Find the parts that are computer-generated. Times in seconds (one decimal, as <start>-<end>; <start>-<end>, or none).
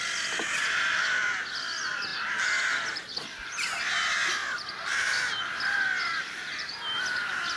6.1-6.7